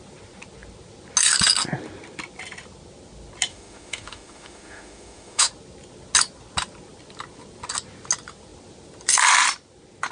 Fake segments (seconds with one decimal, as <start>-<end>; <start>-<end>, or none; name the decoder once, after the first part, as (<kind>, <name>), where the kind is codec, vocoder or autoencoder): 3.5-5.5 (autoencoder, DAC-VAE)